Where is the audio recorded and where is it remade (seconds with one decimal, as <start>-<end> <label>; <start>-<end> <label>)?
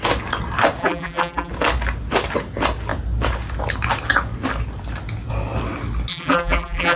0.0-0.8 recorded; 0.8-1.5 remade; 1.5-6.1 recorded; 6.1-7.0 remade